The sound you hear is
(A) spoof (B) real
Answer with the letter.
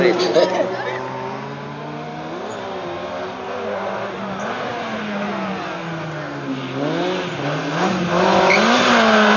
B